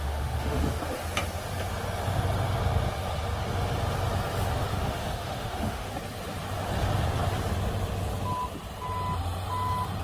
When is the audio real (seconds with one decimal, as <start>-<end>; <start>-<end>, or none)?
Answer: 0.8-4.7; 5.9-10.0